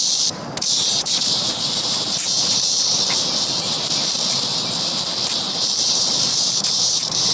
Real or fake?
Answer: fake